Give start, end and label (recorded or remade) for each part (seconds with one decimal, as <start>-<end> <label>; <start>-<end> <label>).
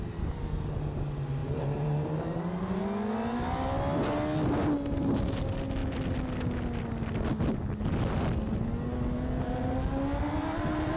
0.0-1.4 recorded; 1.4-2.8 remade; 2.8-11.0 recorded